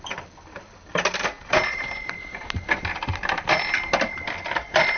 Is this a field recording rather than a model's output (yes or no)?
yes